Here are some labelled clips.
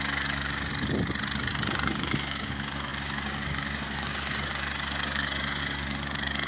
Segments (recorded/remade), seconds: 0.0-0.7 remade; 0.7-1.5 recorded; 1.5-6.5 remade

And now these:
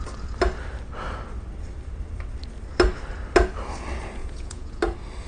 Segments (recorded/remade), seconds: 0.0-4.2 recorded; 4.2-4.8 remade; 4.8-5.3 recorded

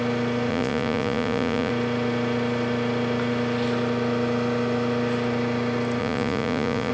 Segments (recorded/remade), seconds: 0.0-0.5 recorded; 0.5-1.7 remade; 1.7-6.0 recorded; 6.0-6.9 remade

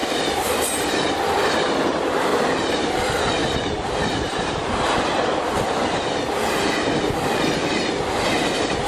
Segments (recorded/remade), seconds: 0.0-0.9 remade; 0.9-2.3 recorded; 2.3-3.0 remade; 3.0-3.4 recorded; 3.4-4.8 remade; 4.8-8.9 recorded

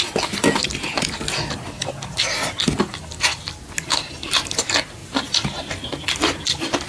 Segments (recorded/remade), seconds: 0.0-5.0 recorded; 5.0-5.7 remade; 5.7-6.9 recorded

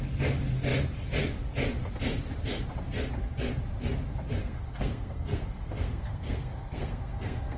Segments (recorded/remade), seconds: 0.0-4.4 recorded; 4.4-7.6 remade

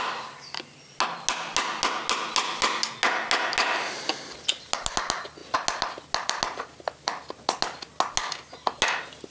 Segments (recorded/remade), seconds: 0.0-9.3 recorded

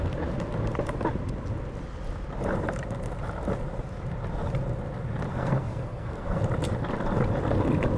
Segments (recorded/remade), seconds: 0.0-5.3 recorded; 5.3-6.4 remade; 6.4-8.0 recorded